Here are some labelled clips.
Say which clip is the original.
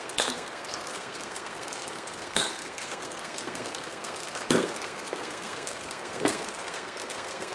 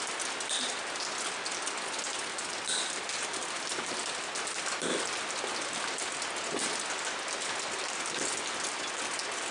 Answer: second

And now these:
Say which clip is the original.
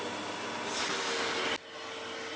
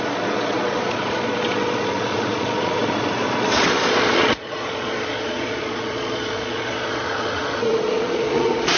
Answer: first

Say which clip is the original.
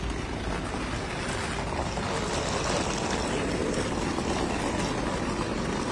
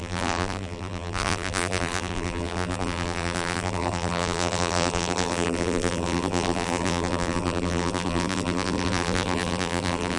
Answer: first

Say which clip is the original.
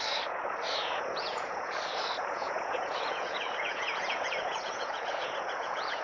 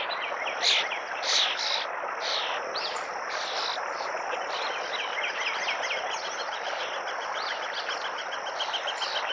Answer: second